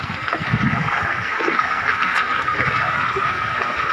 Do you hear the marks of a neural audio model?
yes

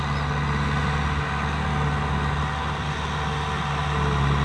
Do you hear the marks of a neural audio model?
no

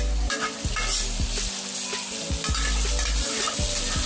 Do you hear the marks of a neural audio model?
no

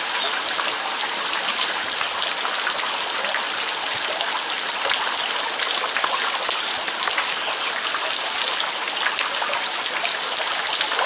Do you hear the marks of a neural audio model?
no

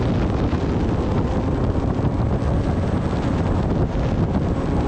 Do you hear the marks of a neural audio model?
no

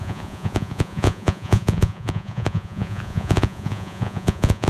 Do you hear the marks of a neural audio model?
yes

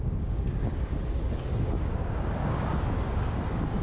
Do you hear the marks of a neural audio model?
yes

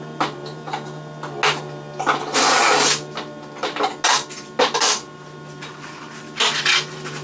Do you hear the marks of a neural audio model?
no